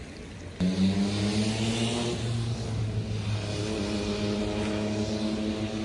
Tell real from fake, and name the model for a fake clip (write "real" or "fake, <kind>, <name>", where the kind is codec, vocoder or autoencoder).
real